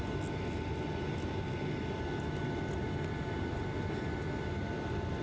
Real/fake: real